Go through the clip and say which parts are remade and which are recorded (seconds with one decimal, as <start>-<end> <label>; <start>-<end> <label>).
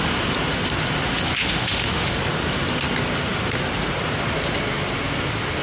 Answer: 0.0-1.4 recorded; 1.4-2.2 remade; 2.2-5.6 recorded